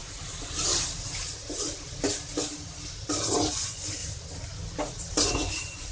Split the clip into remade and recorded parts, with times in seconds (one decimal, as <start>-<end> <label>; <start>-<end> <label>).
0.0-3.5 recorded; 3.5-4.0 remade; 4.0-5.2 recorded; 5.2-5.9 remade